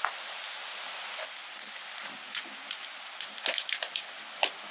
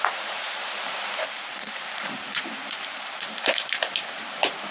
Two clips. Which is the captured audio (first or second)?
first